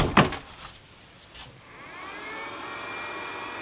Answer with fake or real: fake